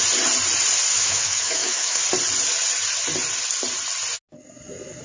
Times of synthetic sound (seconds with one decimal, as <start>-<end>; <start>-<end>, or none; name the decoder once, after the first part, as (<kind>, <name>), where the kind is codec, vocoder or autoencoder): 0.9-2.0 (autoencoder, DAC-VAE)